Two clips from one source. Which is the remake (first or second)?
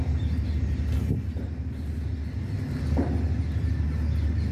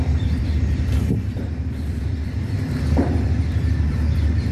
second